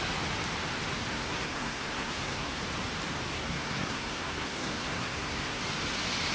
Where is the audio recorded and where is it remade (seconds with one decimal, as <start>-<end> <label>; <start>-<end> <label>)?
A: 0.0-1.1 recorded; 1.1-2.6 remade; 2.6-3.3 recorded; 3.3-5.6 remade; 5.6-6.3 recorded